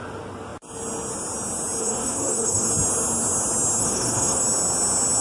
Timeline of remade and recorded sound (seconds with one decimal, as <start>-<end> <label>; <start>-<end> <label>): 0.0-1.8 recorded; 1.8-2.7 remade; 2.7-3.8 recorded; 3.8-4.4 remade; 4.4-5.2 recorded